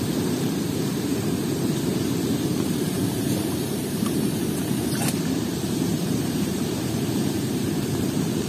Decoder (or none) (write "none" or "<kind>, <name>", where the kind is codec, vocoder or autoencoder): vocoder, BigVGAN v2